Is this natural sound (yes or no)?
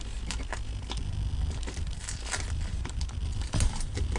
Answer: yes